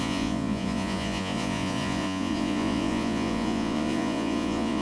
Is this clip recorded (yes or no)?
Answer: no